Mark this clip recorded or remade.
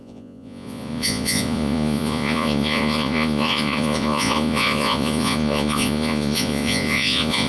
remade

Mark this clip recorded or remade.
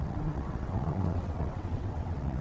remade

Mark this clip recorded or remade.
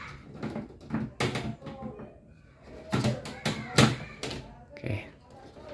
recorded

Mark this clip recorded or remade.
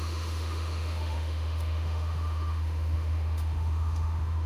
remade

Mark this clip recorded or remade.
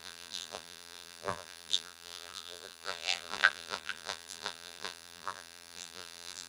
remade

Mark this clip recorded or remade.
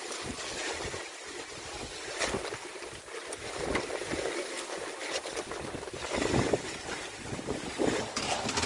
remade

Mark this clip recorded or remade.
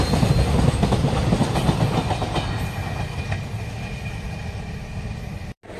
recorded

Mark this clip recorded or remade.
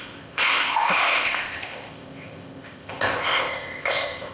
remade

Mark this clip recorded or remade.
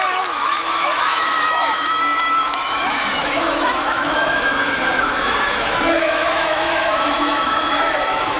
remade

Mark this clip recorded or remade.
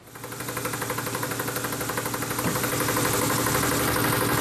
recorded